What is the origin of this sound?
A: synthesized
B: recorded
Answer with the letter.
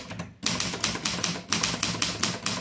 B